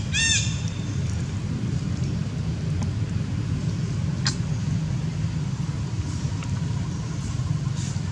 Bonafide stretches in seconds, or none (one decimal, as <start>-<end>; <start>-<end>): 0.0-8.1